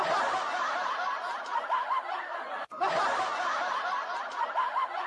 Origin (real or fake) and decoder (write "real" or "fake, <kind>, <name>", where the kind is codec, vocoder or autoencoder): real